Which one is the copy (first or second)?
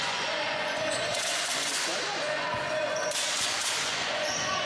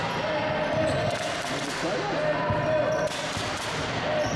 first